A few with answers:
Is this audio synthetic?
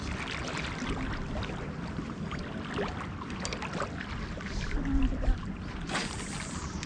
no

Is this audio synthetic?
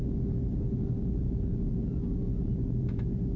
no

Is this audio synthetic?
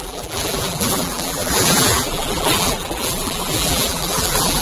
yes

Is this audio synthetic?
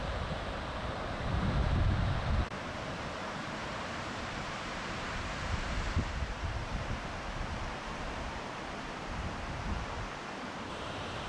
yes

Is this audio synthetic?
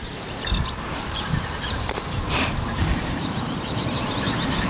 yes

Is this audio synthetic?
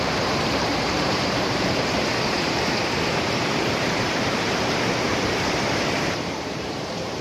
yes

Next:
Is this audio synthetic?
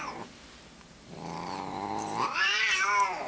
yes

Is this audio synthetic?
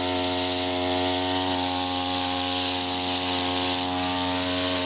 no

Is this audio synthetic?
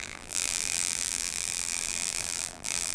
yes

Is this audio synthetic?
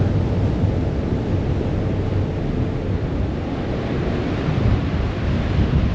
no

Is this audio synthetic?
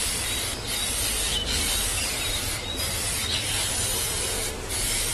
no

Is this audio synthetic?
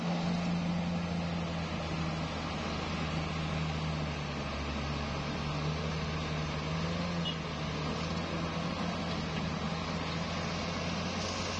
no